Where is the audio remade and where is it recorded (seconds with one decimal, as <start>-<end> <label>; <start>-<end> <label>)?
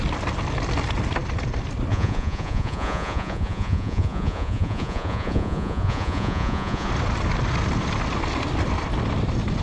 0.0-1.9 recorded; 1.9-6.9 remade; 6.9-9.6 recorded